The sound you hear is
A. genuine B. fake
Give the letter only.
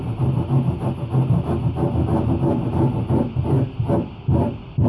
A